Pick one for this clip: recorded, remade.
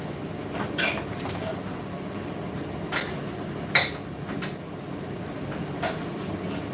recorded